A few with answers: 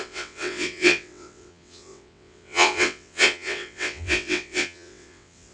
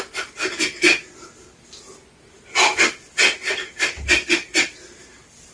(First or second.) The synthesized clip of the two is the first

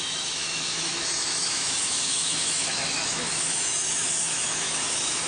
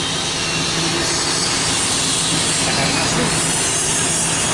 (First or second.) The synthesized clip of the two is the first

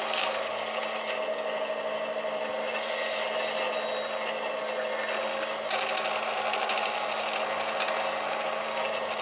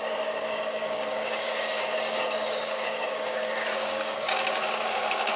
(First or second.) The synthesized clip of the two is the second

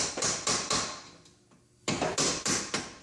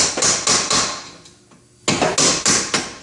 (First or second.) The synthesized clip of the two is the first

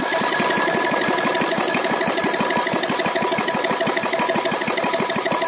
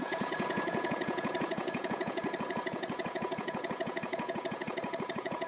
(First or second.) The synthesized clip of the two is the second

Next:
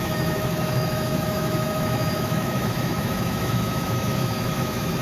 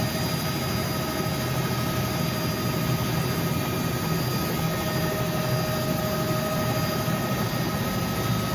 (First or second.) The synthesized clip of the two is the first